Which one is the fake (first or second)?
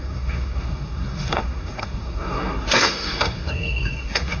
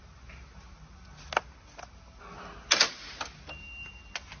first